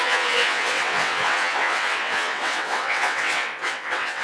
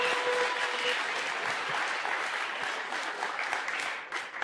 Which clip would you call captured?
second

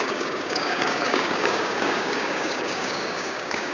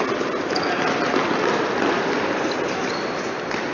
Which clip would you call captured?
second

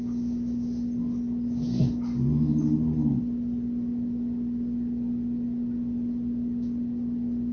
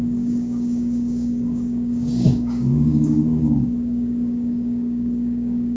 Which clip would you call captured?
first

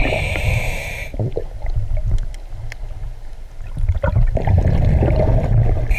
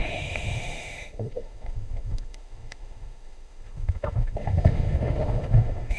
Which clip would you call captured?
first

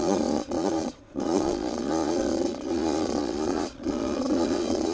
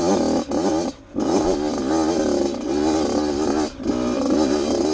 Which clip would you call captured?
second